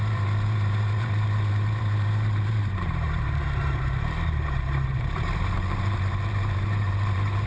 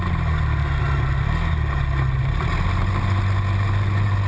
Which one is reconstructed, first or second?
first